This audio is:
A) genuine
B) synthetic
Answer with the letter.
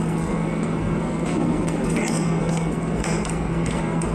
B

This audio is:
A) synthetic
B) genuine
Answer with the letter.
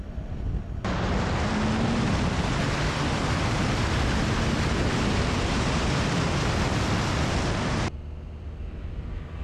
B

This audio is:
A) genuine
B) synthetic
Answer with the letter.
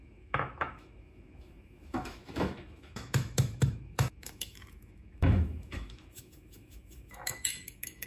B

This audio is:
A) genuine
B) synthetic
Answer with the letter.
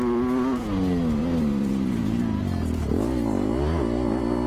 A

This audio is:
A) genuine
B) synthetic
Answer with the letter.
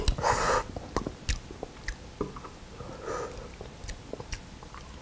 A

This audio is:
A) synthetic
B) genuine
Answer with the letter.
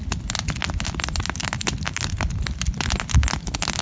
B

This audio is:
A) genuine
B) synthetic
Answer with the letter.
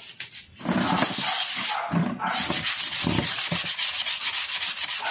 A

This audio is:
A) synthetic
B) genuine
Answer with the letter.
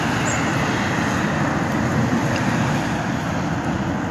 B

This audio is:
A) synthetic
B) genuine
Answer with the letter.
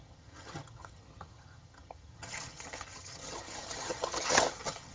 A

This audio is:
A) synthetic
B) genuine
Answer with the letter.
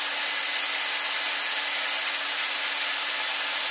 B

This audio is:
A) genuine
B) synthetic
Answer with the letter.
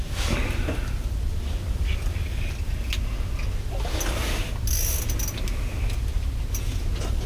A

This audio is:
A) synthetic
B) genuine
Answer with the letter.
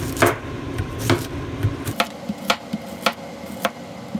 B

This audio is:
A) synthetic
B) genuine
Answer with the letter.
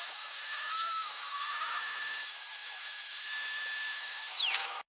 A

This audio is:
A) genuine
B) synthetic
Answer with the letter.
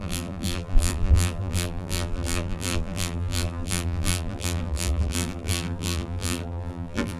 B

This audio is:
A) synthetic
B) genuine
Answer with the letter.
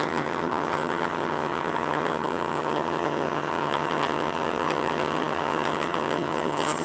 A